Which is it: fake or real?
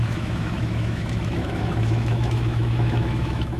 fake